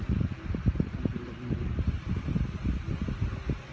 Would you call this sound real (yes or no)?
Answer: yes